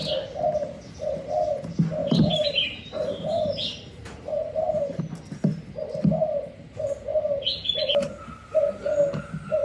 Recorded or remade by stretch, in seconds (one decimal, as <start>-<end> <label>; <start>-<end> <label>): 0.0-2.0 recorded; 2.0-5.0 remade; 5.0-9.6 recorded